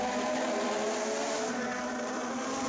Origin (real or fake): real